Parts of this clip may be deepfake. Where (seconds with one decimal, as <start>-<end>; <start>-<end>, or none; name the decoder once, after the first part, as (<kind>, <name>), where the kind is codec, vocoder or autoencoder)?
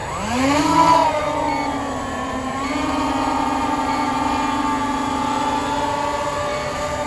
1.0-4.3 (vocoder, BigVGAN v2); 6.5-7.1